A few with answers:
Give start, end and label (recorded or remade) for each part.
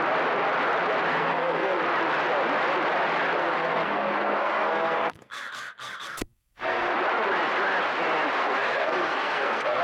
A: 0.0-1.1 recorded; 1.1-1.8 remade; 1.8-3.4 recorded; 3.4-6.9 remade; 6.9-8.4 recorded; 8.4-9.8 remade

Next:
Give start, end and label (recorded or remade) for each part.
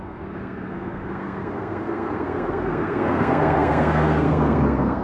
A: 0.0-5.0 remade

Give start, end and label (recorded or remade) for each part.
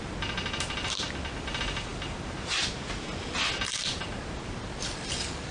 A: 0.0-5.5 recorded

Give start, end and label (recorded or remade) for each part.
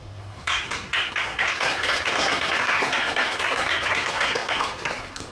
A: 0.0-5.3 remade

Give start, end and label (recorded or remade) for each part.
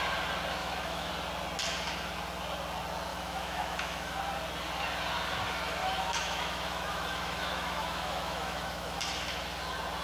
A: 0.0-0.6 recorded; 0.6-1.1 remade; 1.1-3.1 recorded; 3.1-4.2 remade; 4.2-5.8 recorded; 5.8-9.0 remade; 9.0-10.0 recorded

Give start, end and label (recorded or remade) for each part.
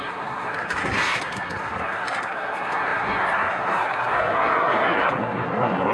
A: 0.0-5.9 remade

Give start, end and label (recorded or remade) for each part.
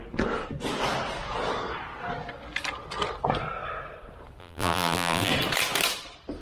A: 0.0-4.4 recorded; 4.4-5.3 remade; 5.3-6.4 recorded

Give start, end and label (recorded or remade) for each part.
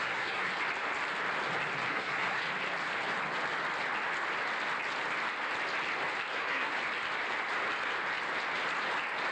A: 0.0-0.5 remade; 0.5-1.9 recorded; 1.9-2.4 remade; 2.4-6.3 recorded; 6.3-6.7 remade; 6.7-9.3 recorded